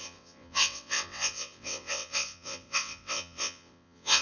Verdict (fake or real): fake